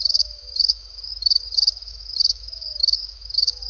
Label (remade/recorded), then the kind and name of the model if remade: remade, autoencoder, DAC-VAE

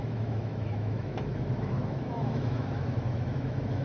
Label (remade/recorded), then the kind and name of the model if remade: remade, autoencoder, DAC-VAE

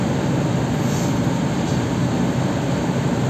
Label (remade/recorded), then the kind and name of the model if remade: recorded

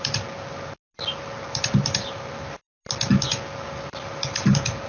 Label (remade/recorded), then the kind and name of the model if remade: recorded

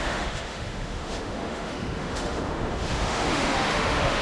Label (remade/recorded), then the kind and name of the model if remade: remade, autoencoder, DAC-VAE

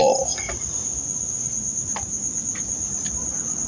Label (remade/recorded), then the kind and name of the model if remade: recorded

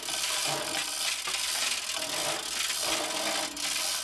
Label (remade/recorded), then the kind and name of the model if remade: recorded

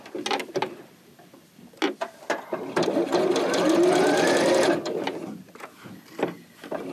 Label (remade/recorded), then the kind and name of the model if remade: recorded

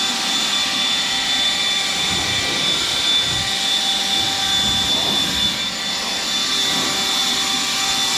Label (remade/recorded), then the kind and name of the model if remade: recorded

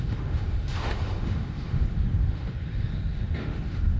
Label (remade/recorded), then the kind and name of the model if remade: remade, autoencoder, DAC-VAE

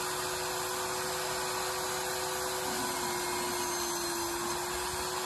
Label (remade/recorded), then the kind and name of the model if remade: recorded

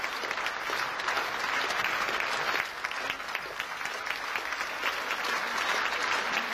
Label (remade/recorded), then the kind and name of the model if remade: recorded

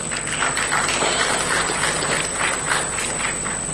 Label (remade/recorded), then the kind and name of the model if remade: recorded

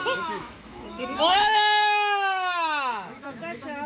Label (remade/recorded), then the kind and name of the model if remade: remade, autoencoder, DAC-VAE